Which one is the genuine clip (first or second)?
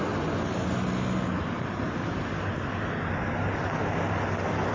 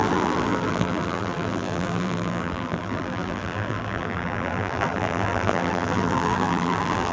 first